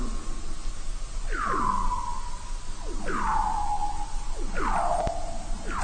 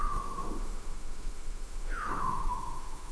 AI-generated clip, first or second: second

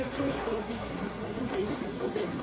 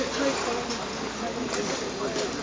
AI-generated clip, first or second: first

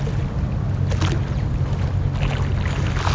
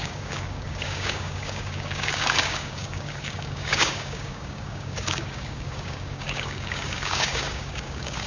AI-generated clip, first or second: second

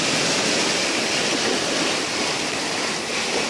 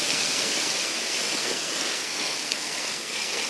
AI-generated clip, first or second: second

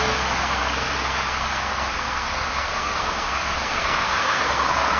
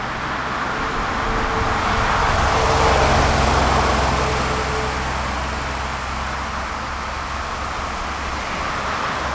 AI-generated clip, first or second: first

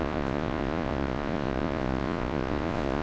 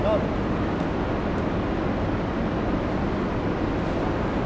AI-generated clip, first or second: first